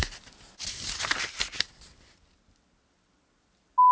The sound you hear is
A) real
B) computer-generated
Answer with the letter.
A